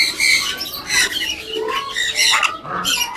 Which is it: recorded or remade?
recorded